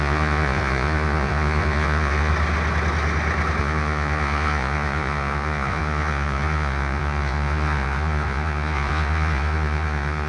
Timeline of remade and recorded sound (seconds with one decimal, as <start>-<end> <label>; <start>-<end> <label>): 0.0-2.3 remade; 2.3-3.6 recorded; 3.6-10.3 remade